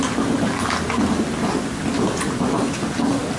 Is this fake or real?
real